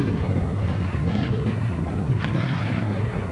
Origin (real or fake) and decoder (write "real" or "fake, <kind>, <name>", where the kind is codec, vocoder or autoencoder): fake, codec, SNAC